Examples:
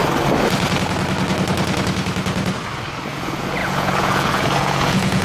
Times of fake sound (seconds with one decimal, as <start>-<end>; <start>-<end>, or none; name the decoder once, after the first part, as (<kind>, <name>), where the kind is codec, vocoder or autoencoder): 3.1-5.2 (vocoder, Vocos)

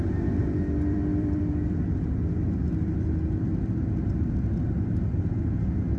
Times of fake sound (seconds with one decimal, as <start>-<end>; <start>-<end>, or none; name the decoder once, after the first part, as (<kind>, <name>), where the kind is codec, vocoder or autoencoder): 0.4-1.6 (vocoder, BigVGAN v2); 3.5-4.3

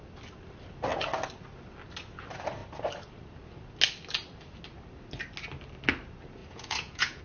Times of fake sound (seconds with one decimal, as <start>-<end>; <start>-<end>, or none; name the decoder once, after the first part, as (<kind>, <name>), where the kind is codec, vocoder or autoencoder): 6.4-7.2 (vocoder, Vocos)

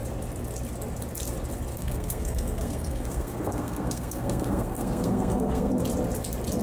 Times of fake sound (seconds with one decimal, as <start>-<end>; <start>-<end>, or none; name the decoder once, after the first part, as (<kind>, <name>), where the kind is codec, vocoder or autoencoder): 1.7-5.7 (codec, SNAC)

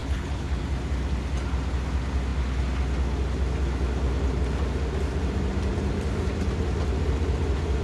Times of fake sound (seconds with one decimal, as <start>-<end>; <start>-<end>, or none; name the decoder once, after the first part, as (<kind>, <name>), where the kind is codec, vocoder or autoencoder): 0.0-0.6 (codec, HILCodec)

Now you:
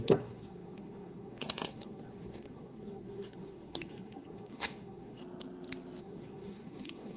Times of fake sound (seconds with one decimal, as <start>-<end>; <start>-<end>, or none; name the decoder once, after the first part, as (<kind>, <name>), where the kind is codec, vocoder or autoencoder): 0.0-5.2 (codec, SNAC); 6.0-7.2